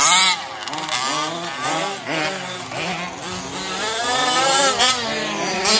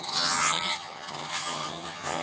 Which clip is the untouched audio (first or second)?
first